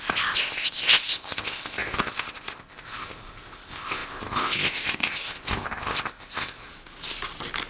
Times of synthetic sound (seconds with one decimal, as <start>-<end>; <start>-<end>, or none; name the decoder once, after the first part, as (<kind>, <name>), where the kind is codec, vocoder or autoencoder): 0.0-6.7 (codec, ZipCodec)

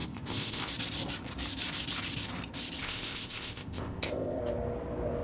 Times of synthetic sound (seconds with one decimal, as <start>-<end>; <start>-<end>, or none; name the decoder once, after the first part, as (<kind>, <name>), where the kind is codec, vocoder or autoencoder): 0.0-0.7 (codec, ZipCodec); 2.8-4.4

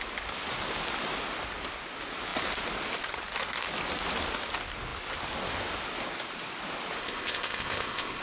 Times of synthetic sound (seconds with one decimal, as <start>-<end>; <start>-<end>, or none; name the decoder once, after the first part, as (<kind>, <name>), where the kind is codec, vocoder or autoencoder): 7.0-8.2 (codec, ZipCodec)

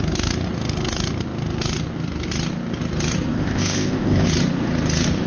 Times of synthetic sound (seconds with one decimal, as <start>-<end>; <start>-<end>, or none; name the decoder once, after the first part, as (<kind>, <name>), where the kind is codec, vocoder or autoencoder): 3.3-4.3 (codec, ZipCodec)